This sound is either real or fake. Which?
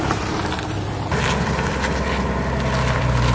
fake